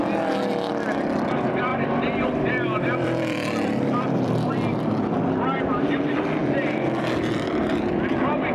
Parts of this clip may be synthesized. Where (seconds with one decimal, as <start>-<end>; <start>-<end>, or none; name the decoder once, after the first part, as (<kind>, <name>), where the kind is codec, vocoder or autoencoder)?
0.7-6.4 (vocoder, BigVGAN v2); 7.0-8.5